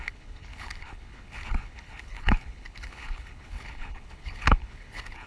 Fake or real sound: fake